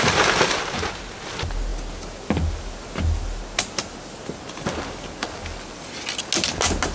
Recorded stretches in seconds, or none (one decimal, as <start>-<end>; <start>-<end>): 0.0-6.9